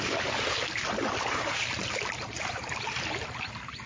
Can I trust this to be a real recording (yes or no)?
yes